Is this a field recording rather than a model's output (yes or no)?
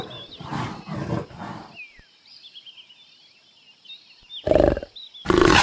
yes